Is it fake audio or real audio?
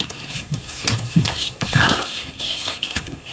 fake